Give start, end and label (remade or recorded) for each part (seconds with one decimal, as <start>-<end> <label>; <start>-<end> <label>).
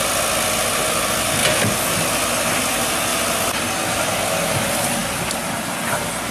0.0-6.3 recorded